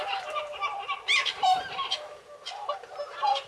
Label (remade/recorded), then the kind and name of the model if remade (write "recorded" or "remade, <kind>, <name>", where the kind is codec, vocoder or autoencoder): remade, vocoder, BigVGAN v2